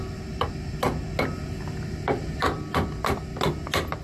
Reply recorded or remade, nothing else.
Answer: recorded